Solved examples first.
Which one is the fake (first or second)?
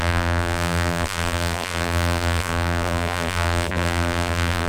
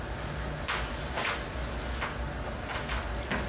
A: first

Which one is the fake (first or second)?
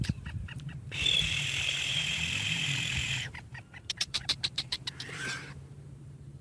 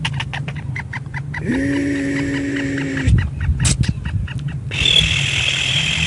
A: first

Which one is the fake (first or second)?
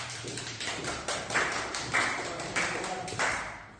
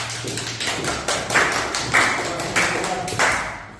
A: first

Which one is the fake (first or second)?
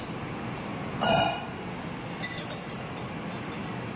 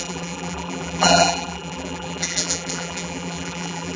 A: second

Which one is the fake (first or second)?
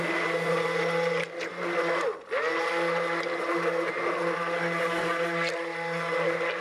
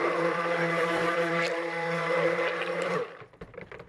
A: second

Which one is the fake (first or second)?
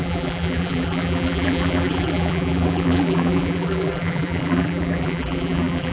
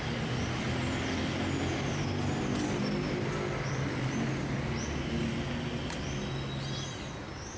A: first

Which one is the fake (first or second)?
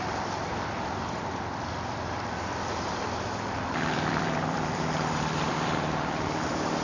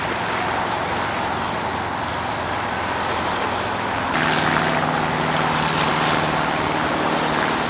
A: first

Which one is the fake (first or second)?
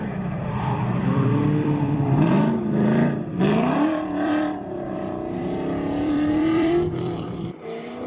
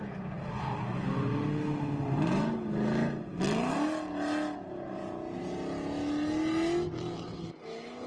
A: first